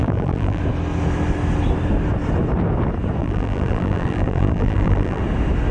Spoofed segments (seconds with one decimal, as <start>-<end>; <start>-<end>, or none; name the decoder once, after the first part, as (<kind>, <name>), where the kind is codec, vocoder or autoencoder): 0.0-0.6 (vocoder, BigVGAN v2); 3.2-5.2